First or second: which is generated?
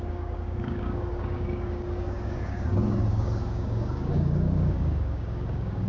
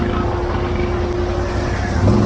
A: first